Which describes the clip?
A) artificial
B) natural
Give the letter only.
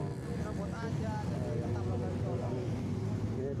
B